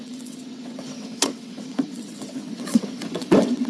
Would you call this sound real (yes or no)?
no